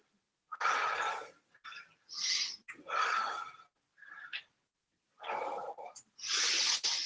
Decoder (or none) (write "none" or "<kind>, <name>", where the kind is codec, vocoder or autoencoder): none